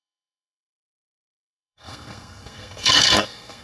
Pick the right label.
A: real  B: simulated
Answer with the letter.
B